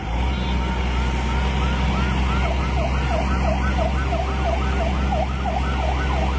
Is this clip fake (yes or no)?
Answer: no